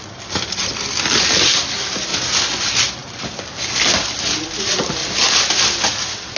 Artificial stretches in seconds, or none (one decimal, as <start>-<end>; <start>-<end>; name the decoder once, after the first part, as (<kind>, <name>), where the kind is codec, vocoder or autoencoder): none